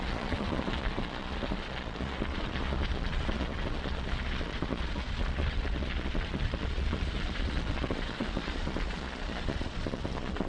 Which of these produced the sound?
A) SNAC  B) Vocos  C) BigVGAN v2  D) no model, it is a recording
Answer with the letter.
B